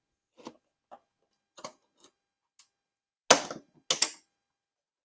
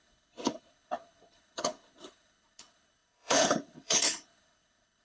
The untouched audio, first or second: first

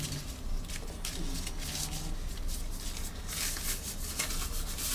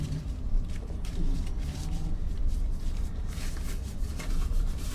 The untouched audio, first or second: first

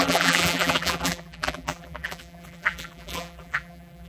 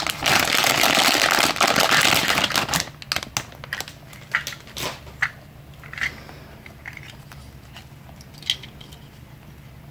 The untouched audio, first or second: second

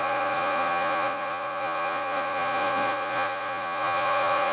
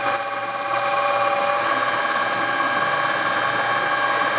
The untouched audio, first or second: second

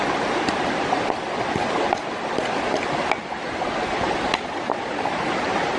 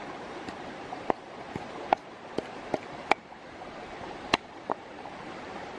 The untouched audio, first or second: first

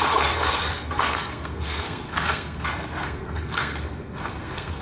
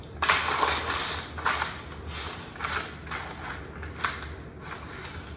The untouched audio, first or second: second